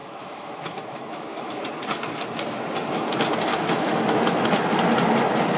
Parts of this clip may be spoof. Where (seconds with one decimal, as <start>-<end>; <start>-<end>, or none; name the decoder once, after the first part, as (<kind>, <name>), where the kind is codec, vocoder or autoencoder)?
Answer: 0.0-1.6 (autoencoder, DAC-VAE); 3.5-4.5